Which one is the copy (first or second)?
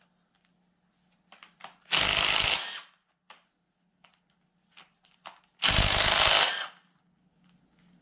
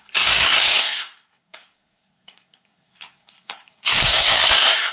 second